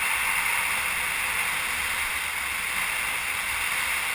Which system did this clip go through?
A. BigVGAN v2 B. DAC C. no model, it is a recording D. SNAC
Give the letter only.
C